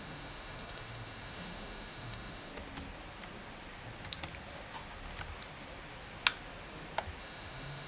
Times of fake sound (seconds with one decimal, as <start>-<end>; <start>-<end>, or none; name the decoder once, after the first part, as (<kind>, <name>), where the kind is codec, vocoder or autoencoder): 0.0-2.5 (autoencoder, DAC-VAE); 7.2-7.9